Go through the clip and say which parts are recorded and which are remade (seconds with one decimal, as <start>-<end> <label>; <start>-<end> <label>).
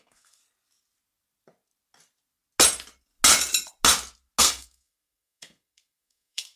0.0-0.4 remade; 0.4-4.4 recorded; 4.4-6.6 remade